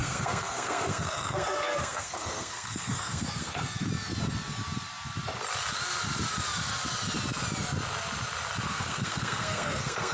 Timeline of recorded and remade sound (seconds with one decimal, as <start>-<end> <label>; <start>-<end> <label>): 0.0-3.9 remade; 3.9-8.7 recorded; 8.7-10.1 remade